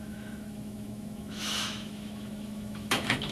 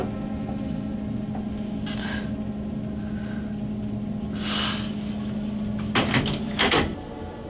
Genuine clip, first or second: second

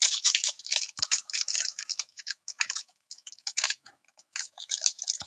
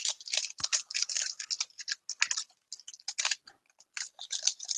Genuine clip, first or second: second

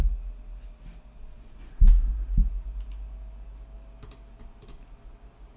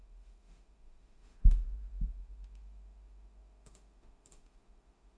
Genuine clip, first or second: first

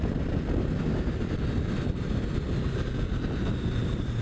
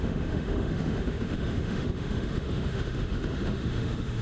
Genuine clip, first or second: first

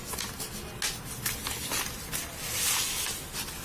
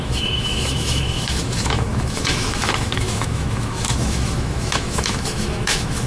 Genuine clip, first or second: first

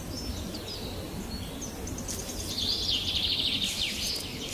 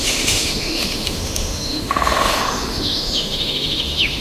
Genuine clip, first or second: first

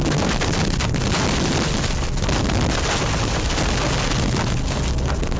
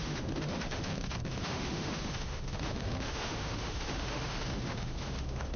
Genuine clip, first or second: first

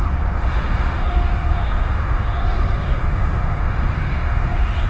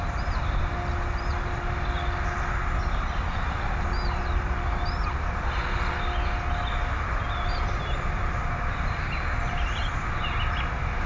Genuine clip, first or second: second